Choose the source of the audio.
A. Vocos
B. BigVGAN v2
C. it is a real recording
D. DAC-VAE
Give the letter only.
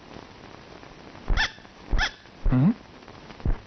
C